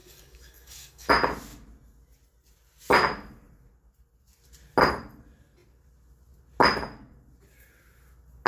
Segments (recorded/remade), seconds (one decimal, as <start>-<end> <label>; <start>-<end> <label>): 0.0-1.1 remade; 1.1-8.5 recorded